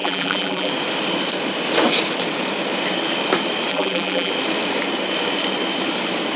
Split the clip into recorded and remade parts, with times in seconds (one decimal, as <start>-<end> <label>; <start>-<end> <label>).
0.0-0.7 remade; 0.7-3.7 recorded; 3.7-4.3 remade; 4.3-6.4 recorded